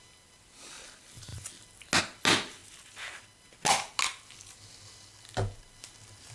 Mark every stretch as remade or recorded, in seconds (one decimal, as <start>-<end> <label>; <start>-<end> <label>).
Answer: 0.0-6.3 recorded

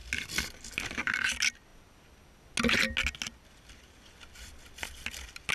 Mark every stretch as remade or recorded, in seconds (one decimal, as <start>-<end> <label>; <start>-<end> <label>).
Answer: 0.0-5.5 recorded

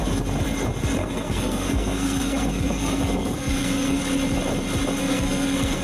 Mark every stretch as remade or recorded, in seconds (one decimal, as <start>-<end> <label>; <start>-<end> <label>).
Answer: 0.0-1.0 recorded; 1.0-4.0 remade; 4.0-5.0 recorded; 5.0-5.8 remade

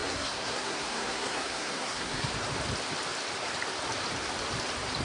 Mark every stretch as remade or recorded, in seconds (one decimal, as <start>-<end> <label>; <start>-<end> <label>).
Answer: 0.0-2.3 remade; 2.3-5.0 recorded